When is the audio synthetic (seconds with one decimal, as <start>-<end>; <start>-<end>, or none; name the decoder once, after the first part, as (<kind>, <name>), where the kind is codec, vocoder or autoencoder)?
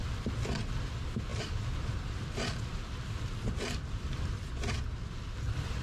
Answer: 0.0-0.6 (vocoder, BigVGAN v2); 1.3-4.8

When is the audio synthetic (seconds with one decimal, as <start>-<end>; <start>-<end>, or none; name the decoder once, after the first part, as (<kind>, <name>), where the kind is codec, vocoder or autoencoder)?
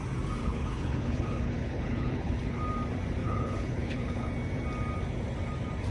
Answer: 0.4-2.6 (codec, HILCodec); 3.2-4.3